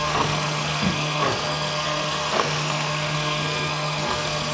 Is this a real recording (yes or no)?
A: no